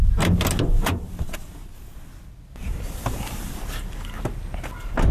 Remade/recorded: recorded